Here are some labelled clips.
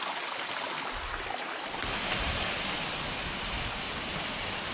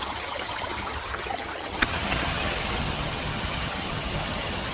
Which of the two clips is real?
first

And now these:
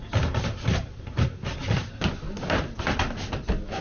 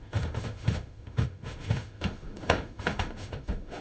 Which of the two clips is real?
first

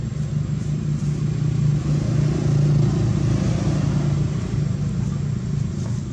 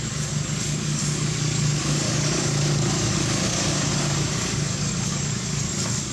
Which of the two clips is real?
first